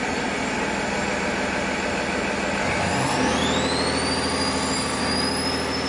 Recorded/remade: recorded